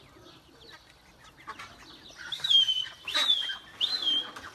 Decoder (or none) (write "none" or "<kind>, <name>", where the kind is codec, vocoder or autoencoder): none